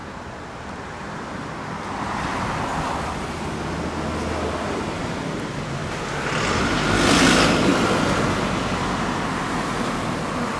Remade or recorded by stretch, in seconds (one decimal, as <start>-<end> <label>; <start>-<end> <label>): 0.0-10.6 recorded